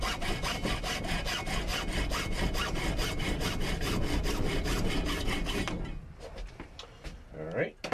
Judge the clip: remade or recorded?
recorded